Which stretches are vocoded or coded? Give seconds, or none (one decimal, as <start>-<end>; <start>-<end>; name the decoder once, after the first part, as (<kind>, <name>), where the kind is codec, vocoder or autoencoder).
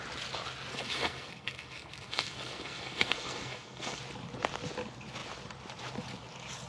0.7-4.0 (codec, SNAC)